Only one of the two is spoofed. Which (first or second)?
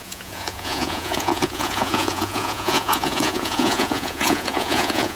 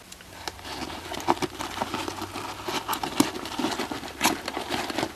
first